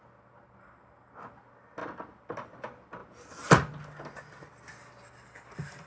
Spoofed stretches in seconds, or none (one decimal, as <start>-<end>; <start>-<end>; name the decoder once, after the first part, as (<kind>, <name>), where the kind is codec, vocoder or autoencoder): none

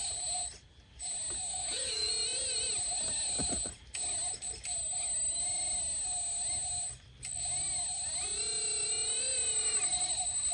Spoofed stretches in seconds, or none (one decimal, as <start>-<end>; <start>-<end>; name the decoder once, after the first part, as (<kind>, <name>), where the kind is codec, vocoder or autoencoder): 1.5-2.1 (autoencoder, DAC-VAE); 4.8-5.4

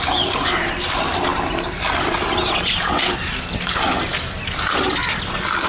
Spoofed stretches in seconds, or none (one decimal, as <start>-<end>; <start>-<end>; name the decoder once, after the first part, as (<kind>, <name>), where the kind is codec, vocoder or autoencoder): none

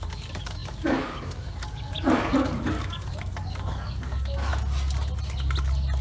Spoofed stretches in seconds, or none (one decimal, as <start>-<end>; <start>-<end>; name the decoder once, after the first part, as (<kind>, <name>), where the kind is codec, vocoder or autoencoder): 0.0-4.5 (codec, DAC)

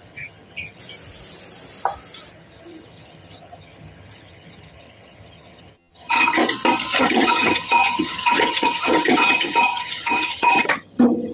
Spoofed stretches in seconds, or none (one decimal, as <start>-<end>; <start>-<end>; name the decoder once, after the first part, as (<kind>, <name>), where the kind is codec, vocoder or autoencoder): 0.0-0.8 (vocoder, HiFi-GAN); 2.3-6.4; 7.0-11.3